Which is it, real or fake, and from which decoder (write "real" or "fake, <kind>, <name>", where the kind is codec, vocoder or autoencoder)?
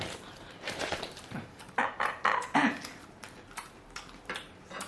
fake, vocoder, BigVGAN v2